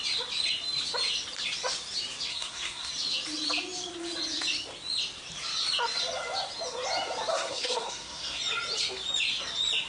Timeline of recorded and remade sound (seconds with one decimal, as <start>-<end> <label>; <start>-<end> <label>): 0.0-2.3 recorded; 2.3-2.9 remade; 2.9-7.3 recorded; 7.3-8.4 remade; 8.4-9.9 recorded